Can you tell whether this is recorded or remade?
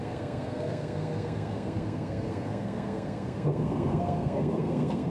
remade